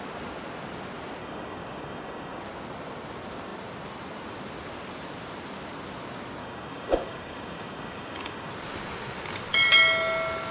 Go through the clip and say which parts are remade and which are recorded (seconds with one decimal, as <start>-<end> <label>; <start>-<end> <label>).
0.0-1.2 recorded; 1.2-2.4 remade; 2.4-6.4 recorded; 6.4-8.5 remade; 8.5-10.5 recorded